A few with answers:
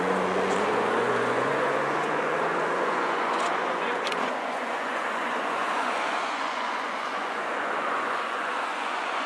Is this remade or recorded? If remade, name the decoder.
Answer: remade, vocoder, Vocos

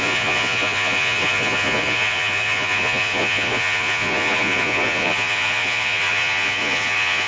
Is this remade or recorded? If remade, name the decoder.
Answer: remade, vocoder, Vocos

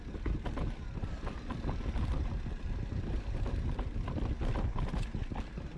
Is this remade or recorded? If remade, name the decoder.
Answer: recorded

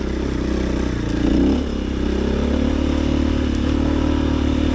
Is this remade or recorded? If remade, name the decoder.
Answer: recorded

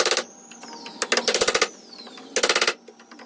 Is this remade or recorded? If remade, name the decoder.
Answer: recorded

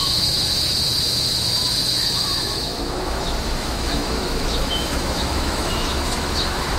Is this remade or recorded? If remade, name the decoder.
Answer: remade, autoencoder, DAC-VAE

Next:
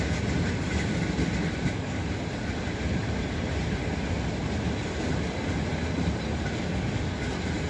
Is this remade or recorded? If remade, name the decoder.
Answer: recorded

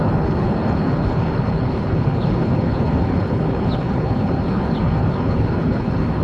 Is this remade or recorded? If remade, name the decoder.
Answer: remade, codec, HILCodec